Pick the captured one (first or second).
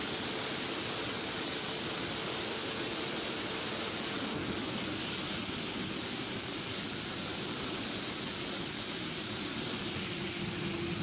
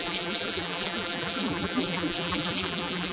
first